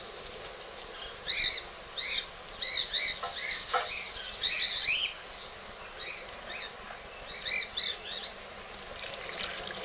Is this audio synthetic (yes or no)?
no